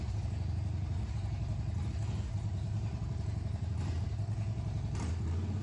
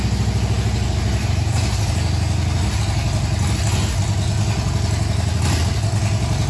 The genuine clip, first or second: second